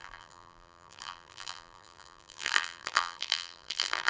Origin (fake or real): fake